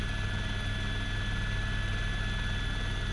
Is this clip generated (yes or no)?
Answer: no